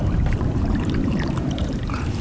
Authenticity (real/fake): fake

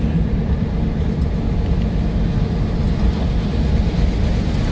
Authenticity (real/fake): real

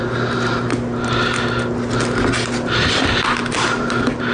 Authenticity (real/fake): real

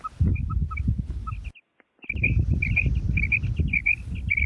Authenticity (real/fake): real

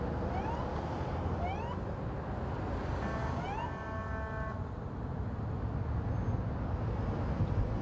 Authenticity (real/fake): real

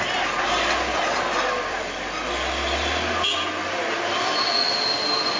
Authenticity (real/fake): real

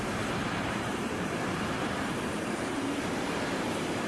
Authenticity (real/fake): fake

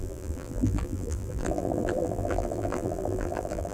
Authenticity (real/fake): fake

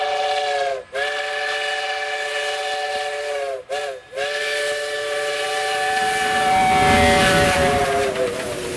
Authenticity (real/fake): real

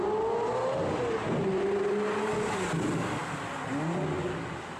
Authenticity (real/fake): real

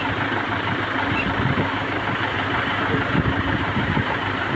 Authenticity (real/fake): fake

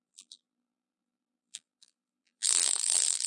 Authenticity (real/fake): fake